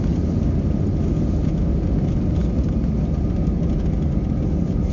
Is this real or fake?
real